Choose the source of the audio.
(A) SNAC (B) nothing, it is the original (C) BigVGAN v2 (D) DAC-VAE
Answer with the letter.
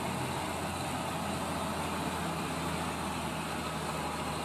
B